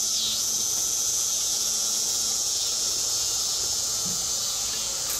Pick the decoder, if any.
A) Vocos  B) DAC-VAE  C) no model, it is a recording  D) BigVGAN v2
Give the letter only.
A